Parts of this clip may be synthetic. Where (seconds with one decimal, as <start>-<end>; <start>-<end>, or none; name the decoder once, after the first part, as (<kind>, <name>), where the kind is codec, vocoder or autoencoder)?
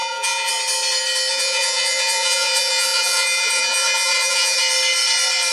0.0-0.5 (vocoder, Vocos); 1.3-4.6